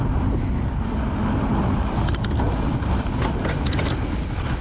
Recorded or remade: recorded